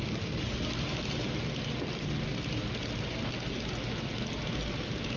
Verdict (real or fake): real